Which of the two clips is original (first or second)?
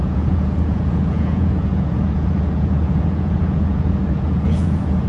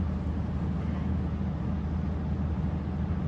second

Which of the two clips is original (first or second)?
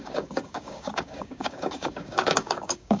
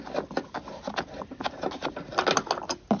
second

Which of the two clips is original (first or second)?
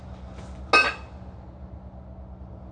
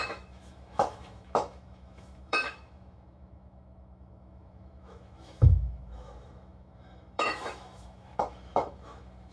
first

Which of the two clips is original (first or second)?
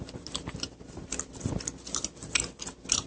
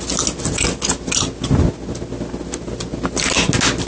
second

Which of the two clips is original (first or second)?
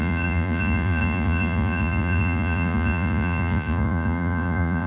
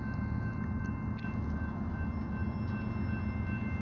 second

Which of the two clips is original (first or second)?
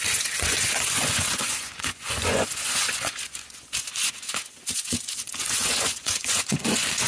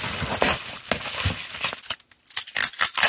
second